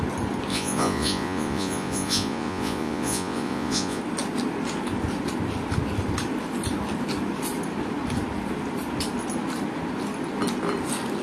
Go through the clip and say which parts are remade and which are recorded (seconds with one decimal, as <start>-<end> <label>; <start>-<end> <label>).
0.0-0.5 recorded; 0.5-4.0 remade; 4.0-11.2 recorded